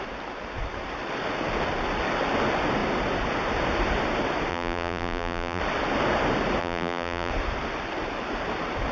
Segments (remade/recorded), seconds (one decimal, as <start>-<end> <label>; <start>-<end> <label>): 0.0-4.5 recorded; 4.5-5.6 remade; 5.6-6.6 recorded; 6.6-7.3 remade; 7.3-8.9 recorded